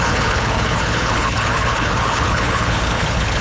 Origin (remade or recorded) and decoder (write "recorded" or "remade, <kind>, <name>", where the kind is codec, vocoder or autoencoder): remade, codec, HILCodec